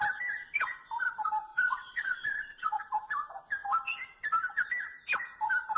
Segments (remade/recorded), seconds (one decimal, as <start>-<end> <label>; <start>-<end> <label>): 0.0-1.5 recorded; 1.5-2.8 remade; 2.8-5.8 recorded